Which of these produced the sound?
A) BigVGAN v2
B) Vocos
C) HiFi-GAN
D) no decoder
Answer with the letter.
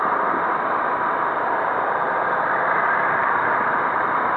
A